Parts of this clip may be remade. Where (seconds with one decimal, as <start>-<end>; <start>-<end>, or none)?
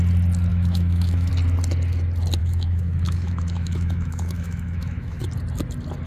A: 0.5-1.3; 2.4-5.2